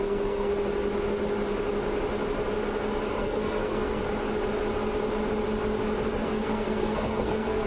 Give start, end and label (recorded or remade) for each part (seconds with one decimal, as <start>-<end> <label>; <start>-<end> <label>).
0.0-0.5 remade; 0.5-3.2 recorded; 3.2-4.0 remade; 4.0-6.1 recorded; 6.1-7.7 remade